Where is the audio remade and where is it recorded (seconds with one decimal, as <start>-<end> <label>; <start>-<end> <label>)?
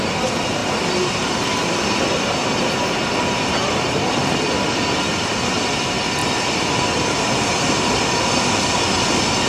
0.0-2.4 recorded; 2.4-3.0 remade; 3.0-9.5 recorded